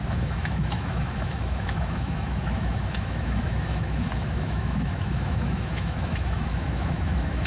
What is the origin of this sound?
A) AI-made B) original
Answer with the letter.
A